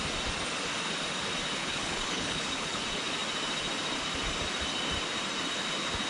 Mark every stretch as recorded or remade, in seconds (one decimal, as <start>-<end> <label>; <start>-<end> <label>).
0.0-1.6 recorded; 1.6-2.8 remade; 2.8-6.1 recorded